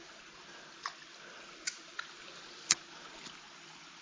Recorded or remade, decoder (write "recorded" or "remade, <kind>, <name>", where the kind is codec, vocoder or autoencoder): recorded